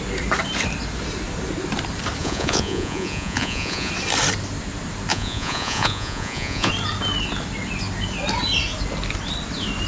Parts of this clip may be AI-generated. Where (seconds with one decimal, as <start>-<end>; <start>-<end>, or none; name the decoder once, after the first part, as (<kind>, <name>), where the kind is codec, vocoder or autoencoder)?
2.2-3.9 (vocoder, Vocos); 5.1-6.7